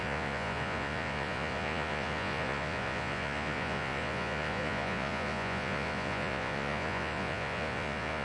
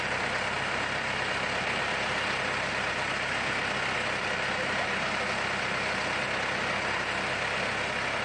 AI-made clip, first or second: first